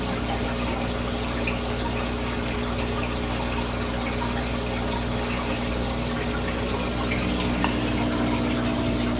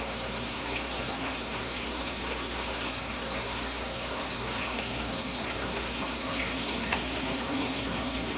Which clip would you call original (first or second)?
first